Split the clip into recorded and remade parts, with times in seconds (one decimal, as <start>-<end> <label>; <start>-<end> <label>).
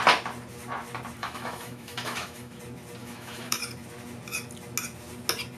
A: 0.0-1.2 recorded; 1.2-2.6 remade; 2.6-3.0 recorded; 3.0-3.6 remade; 3.6-5.6 recorded